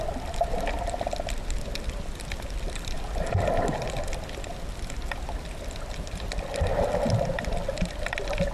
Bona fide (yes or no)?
no